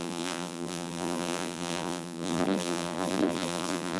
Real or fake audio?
fake